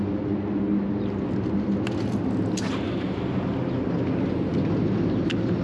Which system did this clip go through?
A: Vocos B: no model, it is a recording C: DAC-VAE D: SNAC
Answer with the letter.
B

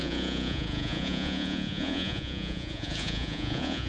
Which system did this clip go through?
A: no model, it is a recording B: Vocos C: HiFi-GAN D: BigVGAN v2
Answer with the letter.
B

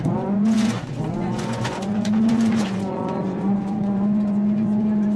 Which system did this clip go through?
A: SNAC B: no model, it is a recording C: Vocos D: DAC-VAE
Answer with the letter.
C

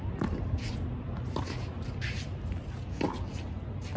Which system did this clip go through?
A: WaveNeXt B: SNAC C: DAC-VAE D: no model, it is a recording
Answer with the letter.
D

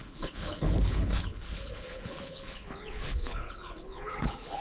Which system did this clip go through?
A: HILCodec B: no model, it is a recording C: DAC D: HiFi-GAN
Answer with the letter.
A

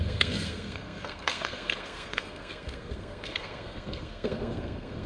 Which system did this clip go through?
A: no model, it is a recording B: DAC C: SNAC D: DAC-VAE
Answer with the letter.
C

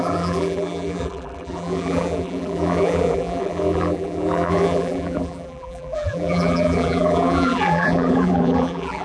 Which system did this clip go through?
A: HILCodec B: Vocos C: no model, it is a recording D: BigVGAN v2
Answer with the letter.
D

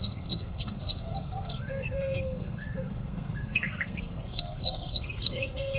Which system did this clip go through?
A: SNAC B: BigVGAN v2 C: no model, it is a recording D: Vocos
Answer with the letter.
A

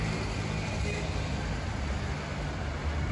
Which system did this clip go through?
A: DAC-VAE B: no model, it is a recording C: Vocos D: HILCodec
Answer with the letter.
B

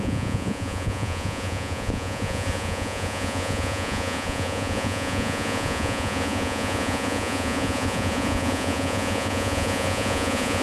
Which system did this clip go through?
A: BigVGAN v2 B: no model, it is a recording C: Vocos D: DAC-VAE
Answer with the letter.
C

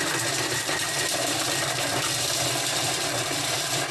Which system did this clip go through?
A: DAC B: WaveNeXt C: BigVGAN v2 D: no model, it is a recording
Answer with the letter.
C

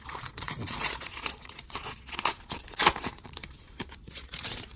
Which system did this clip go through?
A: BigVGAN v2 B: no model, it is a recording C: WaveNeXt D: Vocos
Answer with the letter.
D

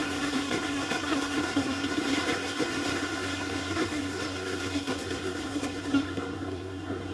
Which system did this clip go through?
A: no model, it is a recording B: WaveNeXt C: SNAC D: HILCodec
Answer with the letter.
C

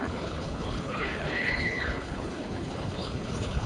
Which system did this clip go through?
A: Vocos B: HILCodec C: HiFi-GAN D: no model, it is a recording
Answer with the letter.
B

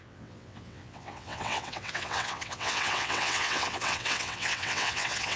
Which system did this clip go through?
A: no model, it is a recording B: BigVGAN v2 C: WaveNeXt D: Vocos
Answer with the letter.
C